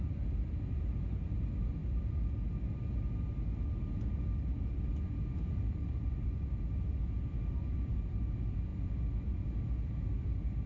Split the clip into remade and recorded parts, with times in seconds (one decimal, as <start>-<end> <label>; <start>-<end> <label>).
0.0-10.7 recorded